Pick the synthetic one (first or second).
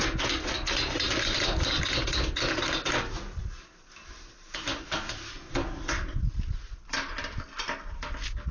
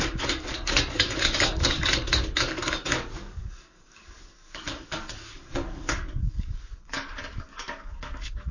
second